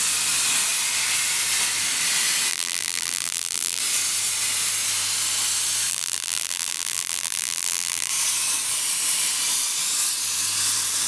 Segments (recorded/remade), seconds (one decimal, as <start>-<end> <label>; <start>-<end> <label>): 0.0-2.5 recorded; 2.5-3.8 remade; 3.8-5.9 recorded; 5.9-8.1 remade; 8.1-11.1 recorded